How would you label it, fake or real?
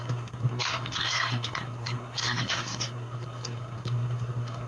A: fake